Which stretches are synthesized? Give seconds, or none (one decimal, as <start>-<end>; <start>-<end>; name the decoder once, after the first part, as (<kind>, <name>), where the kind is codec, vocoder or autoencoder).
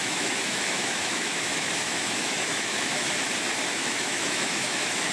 0.0-3.1 (autoencoder, DAC-VAE); 3.7-5.1